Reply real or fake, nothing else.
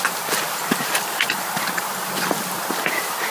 real